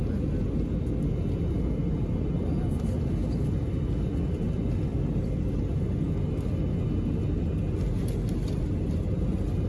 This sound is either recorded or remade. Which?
recorded